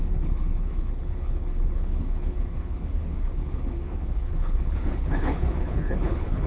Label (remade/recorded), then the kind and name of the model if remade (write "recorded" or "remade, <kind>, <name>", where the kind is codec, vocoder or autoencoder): remade, codec, HILCodec